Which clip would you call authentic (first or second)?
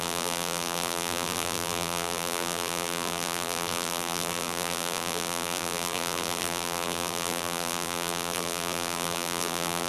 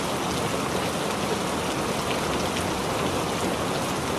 second